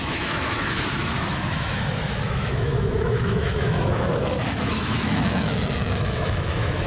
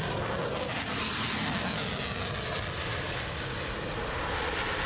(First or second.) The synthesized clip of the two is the first